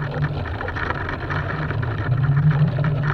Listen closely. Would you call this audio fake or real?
real